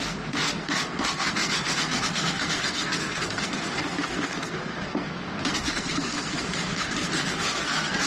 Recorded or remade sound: remade